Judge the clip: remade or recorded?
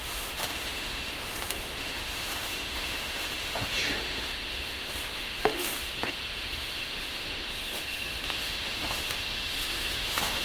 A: remade